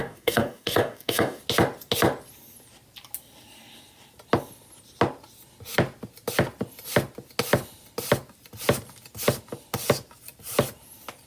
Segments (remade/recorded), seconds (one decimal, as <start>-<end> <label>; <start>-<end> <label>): 0.0-1.4 remade; 1.4-11.3 recorded